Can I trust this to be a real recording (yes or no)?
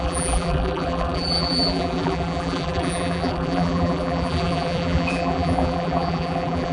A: no